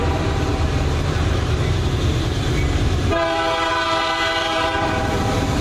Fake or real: fake